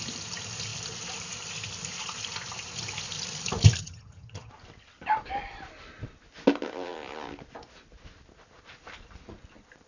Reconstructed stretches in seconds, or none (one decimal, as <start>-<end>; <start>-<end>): 3.8-4.5